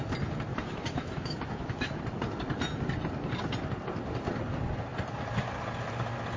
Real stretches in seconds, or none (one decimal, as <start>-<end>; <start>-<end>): 0.0-0.5; 2.0-6.4